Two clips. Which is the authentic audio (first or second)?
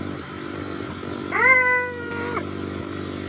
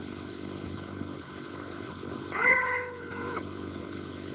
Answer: first